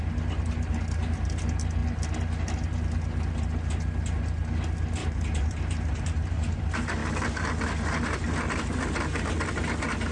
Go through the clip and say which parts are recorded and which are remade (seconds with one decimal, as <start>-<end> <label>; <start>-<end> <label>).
0.0-5.0 recorded; 5.0-6.6 remade; 6.6-10.1 recorded